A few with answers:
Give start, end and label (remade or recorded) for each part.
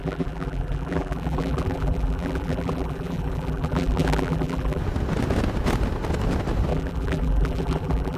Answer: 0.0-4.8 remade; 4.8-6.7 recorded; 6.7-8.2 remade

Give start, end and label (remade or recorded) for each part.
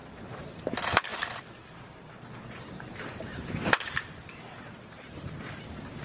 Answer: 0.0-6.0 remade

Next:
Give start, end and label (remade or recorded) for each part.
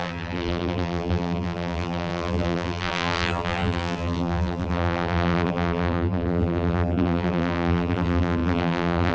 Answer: 0.0-9.1 remade